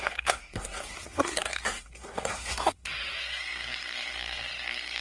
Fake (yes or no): yes